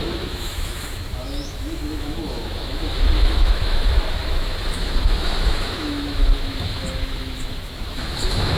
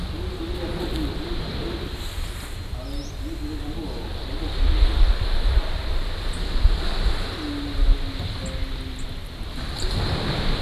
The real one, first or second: second